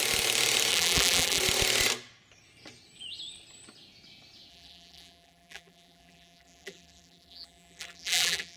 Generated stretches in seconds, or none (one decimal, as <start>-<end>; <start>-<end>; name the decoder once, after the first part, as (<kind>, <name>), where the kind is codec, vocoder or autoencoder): 0.7-1.4 (vocoder, BigVGAN v2); 4.5-8.6